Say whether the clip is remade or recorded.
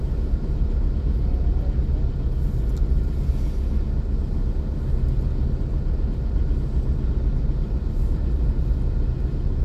recorded